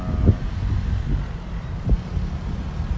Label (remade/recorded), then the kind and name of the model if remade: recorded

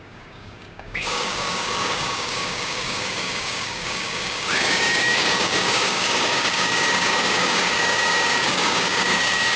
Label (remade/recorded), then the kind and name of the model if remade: remade, codec, DAC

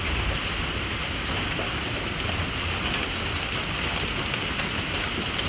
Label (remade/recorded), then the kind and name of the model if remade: recorded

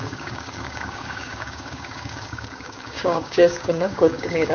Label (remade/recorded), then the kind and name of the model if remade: remade, codec, DAC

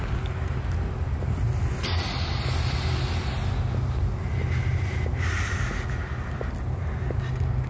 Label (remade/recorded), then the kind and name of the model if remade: recorded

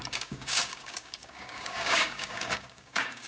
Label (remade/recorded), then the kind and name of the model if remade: remade, codec, DAC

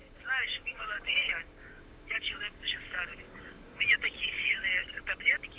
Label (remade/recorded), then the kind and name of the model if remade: remade, codec, DAC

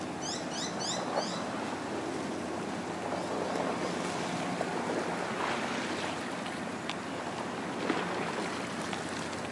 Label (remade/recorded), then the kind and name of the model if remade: recorded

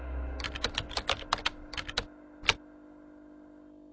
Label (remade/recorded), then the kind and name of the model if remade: recorded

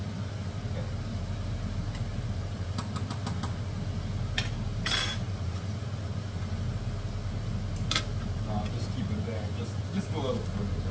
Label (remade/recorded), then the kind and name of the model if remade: recorded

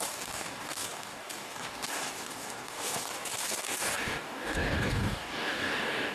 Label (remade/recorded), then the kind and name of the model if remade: remade, codec, DAC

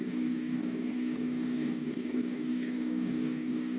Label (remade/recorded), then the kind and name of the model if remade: remade, codec, DAC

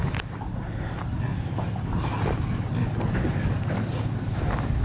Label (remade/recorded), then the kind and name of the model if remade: recorded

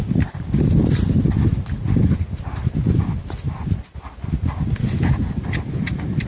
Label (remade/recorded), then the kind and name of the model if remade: recorded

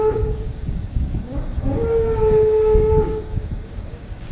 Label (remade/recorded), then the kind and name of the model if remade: remade, codec, DAC